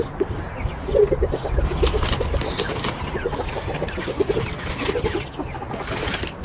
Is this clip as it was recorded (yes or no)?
yes